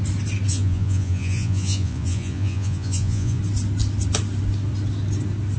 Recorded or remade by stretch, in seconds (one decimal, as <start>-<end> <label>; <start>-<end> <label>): 0.0-0.5 recorded; 0.5-3.4 remade; 3.4-5.6 recorded